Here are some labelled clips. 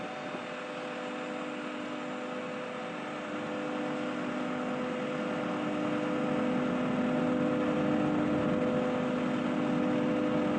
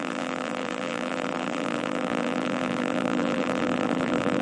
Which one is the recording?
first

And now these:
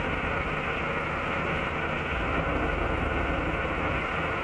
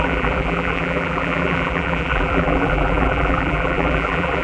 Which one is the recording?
first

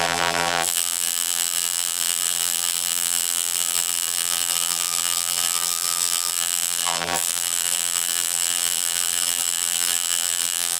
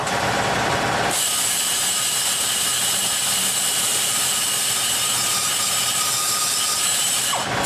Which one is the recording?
second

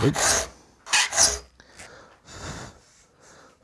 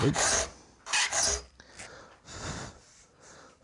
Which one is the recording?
first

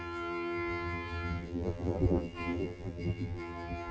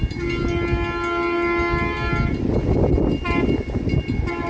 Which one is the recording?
second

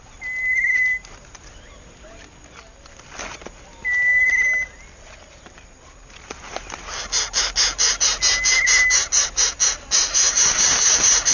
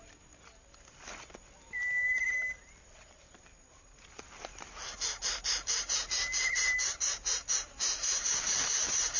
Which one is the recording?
first